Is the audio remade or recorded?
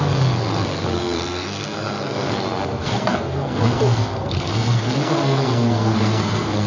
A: remade